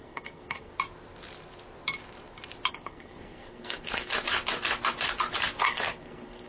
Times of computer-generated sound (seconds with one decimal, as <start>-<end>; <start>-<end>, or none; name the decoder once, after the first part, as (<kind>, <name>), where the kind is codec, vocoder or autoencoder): 0.0-0.7 (codec, SNAC); 2.7-4.1; 5.6-6.5